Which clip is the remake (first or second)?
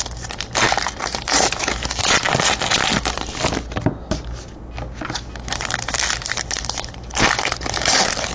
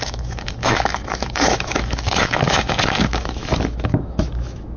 second